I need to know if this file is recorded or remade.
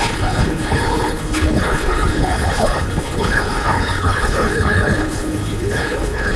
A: remade